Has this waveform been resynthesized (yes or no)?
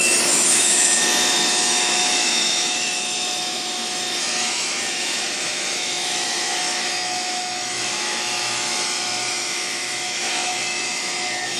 yes